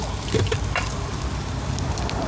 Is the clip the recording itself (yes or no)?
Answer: yes